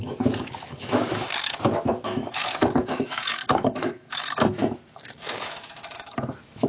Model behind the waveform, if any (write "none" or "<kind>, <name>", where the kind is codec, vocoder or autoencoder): autoencoder, DAC-VAE